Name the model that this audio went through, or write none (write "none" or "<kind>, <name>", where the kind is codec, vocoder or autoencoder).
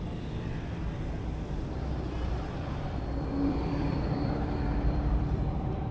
vocoder, BigVGAN v2